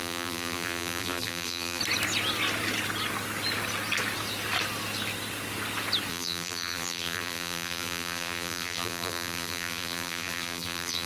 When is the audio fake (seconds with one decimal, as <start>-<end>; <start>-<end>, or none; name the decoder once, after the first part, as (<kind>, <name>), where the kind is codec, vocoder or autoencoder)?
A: 0.0-1.8 (vocoder, BigVGAN v2); 6.1-11.1